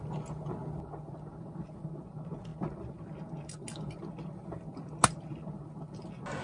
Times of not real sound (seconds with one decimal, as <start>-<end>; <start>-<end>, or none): none